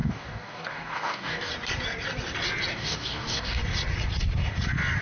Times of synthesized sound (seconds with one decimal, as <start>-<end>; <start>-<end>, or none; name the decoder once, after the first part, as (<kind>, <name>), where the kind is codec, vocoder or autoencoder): 0.0-1.5 (codec, DAC); 2.7-3.6